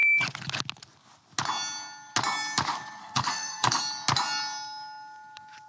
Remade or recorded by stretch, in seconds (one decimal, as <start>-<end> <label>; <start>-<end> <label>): 0.0-3.0 recorded; 3.0-3.8 remade; 3.8-5.7 recorded